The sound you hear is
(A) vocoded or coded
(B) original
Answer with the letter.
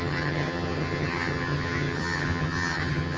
A